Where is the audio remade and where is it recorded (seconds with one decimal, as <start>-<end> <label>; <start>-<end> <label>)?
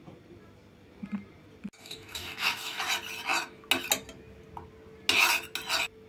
0.0-1.8 recorded; 1.8-2.8 remade; 2.8-6.1 recorded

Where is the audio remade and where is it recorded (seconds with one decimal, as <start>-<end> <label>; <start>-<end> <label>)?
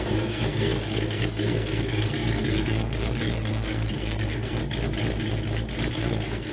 0.0-4.6 remade; 4.6-5.9 recorded; 5.9-6.5 remade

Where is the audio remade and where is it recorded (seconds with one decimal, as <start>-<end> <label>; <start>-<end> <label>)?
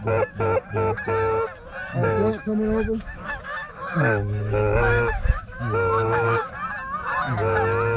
0.0-1.9 recorded; 1.9-6.5 remade; 6.5-8.0 recorded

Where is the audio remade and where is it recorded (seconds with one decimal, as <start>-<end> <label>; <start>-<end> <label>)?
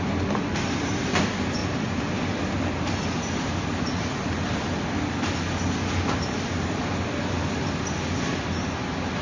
0.0-1.6 recorded; 1.6-2.2 remade; 2.2-9.2 recorded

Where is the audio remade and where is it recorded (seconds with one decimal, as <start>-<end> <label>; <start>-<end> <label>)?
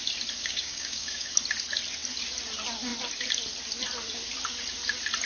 0.0-0.4 recorded; 0.4-1.3 remade; 1.3-5.3 recorded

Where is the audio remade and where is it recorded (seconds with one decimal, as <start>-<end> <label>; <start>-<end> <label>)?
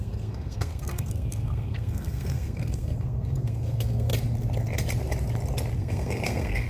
0.0-4.1 remade; 4.1-5.8 recorded; 5.8-6.7 remade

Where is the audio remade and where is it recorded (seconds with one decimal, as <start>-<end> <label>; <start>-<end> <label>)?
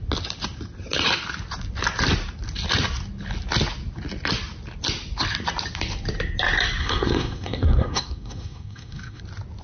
0.0-6.8 recorded; 6.8-9.2 remade; 9.2-9.6 recorded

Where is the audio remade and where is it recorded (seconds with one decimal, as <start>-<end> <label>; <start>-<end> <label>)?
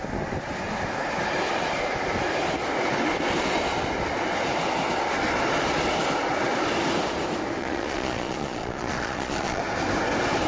0.0-7.6 recorded; 7.6-9.6 remade; 9.6-10.5 recorded